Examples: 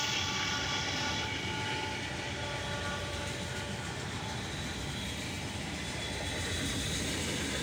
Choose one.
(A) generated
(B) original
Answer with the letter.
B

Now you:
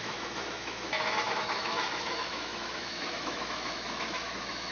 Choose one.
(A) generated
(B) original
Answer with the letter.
A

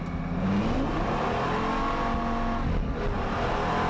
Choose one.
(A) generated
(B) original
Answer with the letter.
B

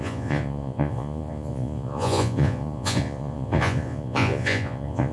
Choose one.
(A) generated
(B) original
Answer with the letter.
A